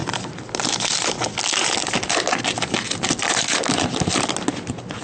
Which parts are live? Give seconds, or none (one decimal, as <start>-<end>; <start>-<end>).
0.0-5.0